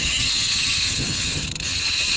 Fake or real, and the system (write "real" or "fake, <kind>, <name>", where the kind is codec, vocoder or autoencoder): fake, vocoder, HiFi-GAN